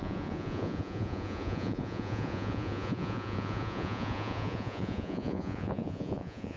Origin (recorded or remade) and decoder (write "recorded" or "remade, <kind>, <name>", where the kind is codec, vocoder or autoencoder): remade, vocoder, Vocos